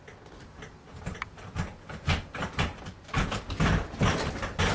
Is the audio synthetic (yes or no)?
no